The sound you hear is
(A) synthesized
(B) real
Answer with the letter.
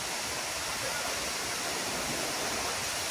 B